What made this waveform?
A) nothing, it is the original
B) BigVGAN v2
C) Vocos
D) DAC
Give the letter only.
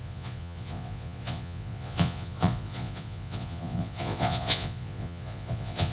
C